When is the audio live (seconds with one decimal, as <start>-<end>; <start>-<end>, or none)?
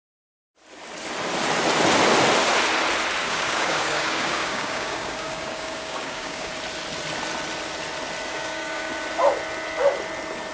0.0-3.2; 6.5-8.3; 8.9-10.5